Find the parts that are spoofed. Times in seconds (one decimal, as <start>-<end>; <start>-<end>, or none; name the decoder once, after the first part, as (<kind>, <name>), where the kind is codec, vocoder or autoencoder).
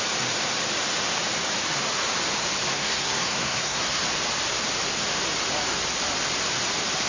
2.7-4.0 (codec, SNAC)